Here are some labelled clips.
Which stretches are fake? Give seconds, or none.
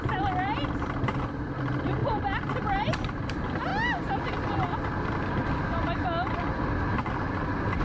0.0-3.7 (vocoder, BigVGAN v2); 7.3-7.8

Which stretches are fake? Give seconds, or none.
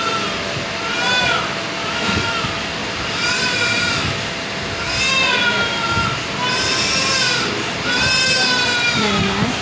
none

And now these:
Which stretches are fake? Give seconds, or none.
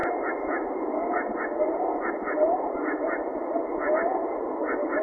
none